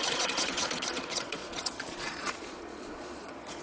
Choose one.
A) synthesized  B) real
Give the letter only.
A